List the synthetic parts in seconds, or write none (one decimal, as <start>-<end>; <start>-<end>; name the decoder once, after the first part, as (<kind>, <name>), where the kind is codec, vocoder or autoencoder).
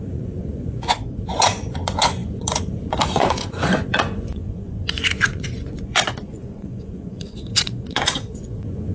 0.0-8.9 (vocoder, Vocos)